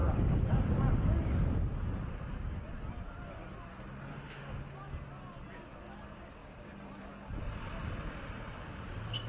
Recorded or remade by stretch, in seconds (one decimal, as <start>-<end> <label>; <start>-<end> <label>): 0.0-4.1 recorded; 4.1-4.6 remade; 4.6-9.3 recorded